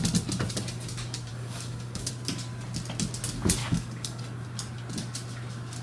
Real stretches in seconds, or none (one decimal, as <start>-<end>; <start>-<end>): 0.0-1.3; 2.1-3.6; 4.2-5.8